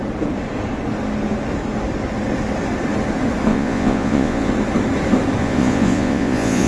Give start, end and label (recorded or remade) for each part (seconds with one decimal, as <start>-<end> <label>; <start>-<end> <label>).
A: 0.0-3.5 recorded; 3.5-4.5 remade; 4.5-5.4 recorded; 5.4-6.7 remade